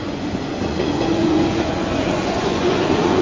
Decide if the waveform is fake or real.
fake